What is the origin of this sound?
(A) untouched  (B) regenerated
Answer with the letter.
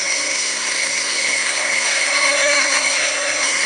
B